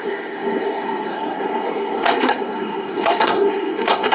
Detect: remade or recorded remade